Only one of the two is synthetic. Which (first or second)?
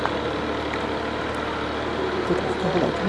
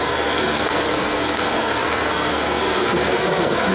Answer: second